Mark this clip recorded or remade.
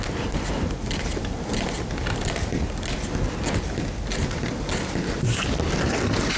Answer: recorded